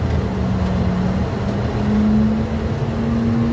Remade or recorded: recorded